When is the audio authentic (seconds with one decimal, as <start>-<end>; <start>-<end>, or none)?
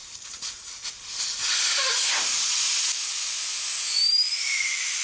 1.4-4.4